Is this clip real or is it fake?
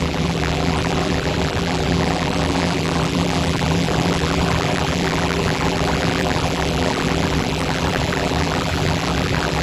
fake